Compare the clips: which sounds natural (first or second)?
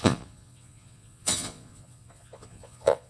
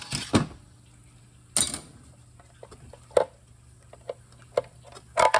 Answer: second